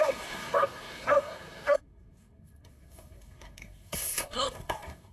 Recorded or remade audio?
remade